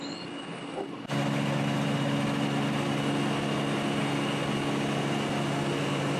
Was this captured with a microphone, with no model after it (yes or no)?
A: yes